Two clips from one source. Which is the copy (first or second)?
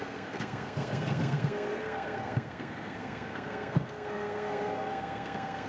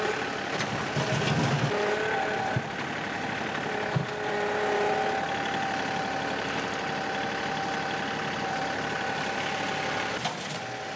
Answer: first